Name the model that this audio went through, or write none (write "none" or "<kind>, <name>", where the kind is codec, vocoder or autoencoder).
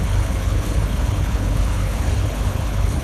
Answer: codec, HILCodec